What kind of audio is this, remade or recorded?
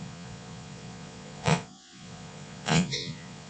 remade